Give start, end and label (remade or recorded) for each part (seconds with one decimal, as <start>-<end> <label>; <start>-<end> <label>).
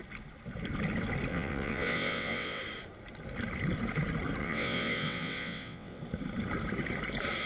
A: 0.0-1.3 recorded; 1.3-2.6 remade; 2.6-4.4 recorded; 4.4-6.0 remade; 6.0-7.5 recorded